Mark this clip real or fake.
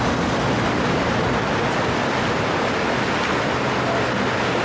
real